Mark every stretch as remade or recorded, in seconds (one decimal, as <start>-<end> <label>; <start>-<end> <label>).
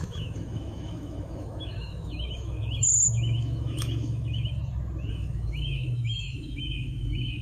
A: 0.0-4.6 remade; 4.6-5.1 recorded; 5.1-7.4 remade